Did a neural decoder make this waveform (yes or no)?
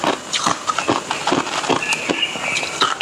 no